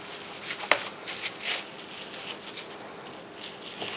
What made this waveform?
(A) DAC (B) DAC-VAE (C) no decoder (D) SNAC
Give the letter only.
C